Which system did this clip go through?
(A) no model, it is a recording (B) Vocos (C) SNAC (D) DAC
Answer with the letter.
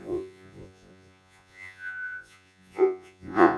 B